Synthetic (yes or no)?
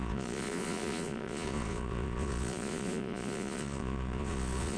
yes